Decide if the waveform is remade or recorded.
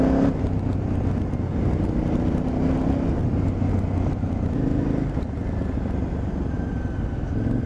recorded